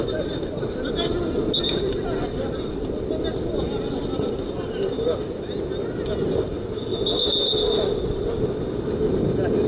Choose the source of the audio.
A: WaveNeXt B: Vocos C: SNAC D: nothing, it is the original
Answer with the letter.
D